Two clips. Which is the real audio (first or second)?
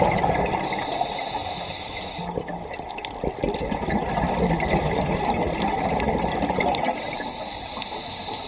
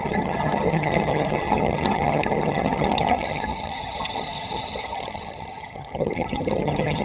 first